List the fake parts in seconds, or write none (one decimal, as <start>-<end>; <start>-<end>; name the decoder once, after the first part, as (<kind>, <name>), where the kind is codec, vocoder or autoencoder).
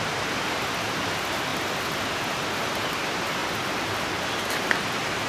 0.0-1.5 (vocoder, BigVGAN v2); 2.5-3.4; 3.9-5.3